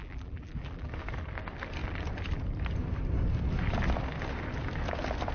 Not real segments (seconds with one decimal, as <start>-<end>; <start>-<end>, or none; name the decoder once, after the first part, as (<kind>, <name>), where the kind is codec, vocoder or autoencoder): 0.0-0.9 (vocoder, BigVGAN v2)